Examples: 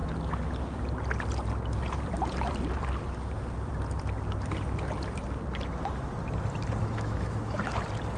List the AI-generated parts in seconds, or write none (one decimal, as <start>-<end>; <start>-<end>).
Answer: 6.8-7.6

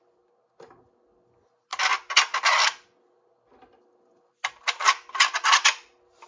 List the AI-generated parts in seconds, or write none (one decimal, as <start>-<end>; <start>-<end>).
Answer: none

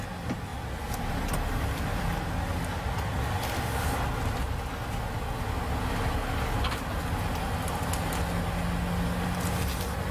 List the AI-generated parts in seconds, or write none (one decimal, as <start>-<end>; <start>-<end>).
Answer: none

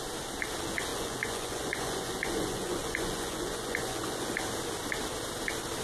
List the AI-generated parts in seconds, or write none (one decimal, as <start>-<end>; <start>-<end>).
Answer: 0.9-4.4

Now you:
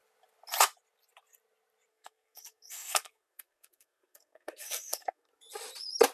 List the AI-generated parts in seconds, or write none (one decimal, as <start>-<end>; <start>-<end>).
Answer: 1.9-5.3

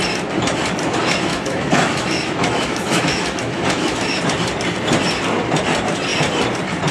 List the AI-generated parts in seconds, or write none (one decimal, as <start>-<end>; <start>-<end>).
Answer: 1.3-4.2

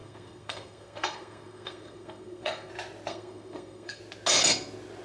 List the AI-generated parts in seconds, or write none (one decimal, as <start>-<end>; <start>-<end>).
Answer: 0.0-2.7; 3.1-4.0